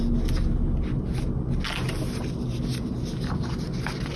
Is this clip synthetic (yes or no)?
no